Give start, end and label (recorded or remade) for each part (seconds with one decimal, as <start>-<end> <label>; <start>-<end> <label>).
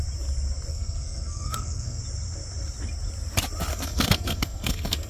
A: 0.0-0.7 recorded; 0.7-2.0 remade; 2.0-3.7 recorded; 3.7-5.1 remade